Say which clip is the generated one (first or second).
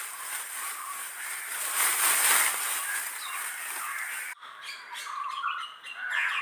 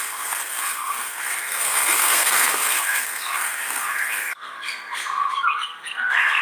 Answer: second